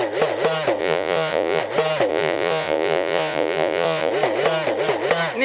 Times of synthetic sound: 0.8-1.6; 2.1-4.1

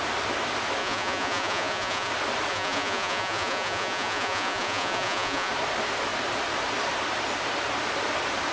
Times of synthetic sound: 0.8-2.1; 2.5-5.5

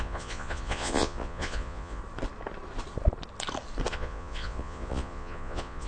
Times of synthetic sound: 0.0-2.0; 3.9-5.9